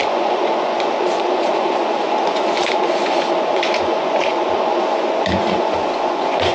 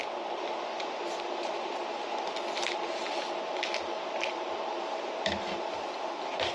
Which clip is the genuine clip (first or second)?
second